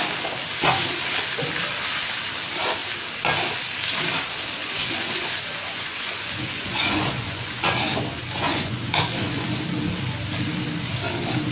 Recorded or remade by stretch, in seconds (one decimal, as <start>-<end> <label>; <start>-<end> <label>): 0.0-4.6 recorded; 4.6-9.6 remade; 9.6-11.5 recorded